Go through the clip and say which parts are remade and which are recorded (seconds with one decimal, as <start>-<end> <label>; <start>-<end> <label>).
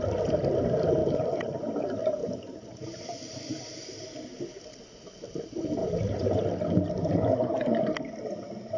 0.0-1.0 recorded; 1.0-1.6 remade; 1.6-2.2 recorded; 2.2-3.0 remade; 3.0-5.8 recorded; 5.8-6.4 remade; 6.4-8.8 recorded